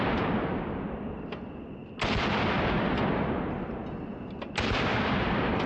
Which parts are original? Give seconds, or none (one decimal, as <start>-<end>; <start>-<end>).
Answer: 0.0-5.7